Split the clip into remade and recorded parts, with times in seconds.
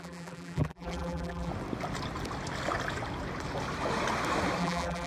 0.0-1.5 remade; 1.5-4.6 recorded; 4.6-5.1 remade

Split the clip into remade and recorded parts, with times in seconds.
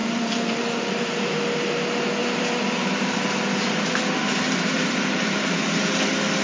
0.0-1.3 remade; 1.3-2.2 recorded; 2.2-6.0 remade; 6.0-6.4 recorded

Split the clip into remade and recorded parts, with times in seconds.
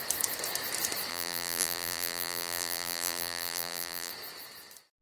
0.0-1.1 recorded; 1.1-4.1 remade; 4.1-5.0 recorded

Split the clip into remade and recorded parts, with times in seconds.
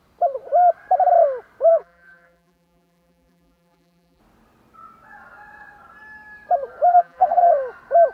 0.0-1.7 recorded; 1.7-4.2 remade; 4.2-6.9 recorded; 6.9-7.5 remade; 7.5-8.1 recorded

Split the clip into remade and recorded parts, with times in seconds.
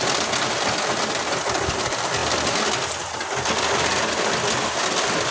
0.0-5.3 recorded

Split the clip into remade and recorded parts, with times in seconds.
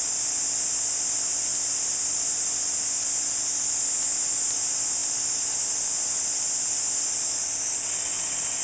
0.0-8.6 recorded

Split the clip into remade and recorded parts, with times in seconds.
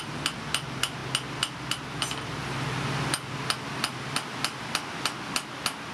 0.0-5.9 recorded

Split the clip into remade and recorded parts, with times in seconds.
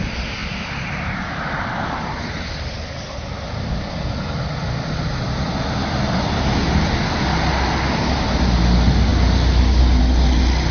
0.0-0.4 recorded; 0.4-4.0 remade; 4.0-5.8 recorded; 5.8-6.9 remade; 6.9-10.7 recorded